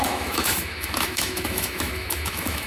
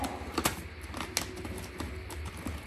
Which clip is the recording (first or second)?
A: second